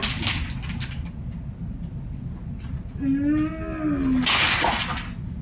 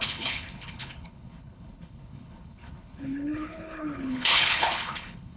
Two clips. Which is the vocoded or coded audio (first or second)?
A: second